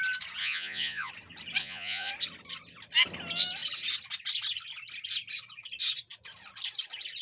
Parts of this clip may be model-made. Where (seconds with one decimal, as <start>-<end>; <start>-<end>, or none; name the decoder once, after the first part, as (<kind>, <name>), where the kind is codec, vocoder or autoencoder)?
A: 0.4-1.1 (vocoder, Vocos); 1.6-2.1